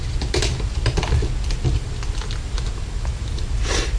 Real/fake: real